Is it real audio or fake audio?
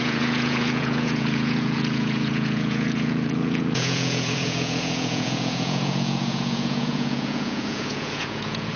fake